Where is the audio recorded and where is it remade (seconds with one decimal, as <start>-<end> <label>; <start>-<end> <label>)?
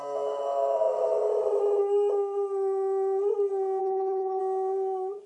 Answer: 0.0-3.8 recorded; 3.8-4.4 remade; 4.4-5.3 recorded